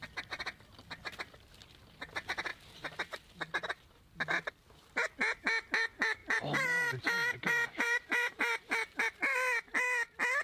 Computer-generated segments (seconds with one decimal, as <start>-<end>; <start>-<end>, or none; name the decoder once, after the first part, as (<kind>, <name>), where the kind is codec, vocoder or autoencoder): 2.5-4.0 (vocoder, BigVGAN v2); 6.2-8.3